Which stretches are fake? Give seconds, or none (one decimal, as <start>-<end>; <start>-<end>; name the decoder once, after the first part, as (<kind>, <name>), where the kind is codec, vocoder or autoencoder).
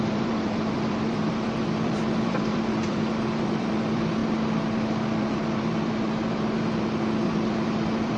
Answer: 0.0-4.2 (vocoder, BigVGAN v2); 7.2-8.2